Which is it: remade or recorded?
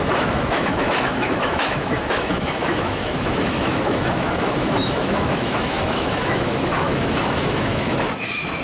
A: remade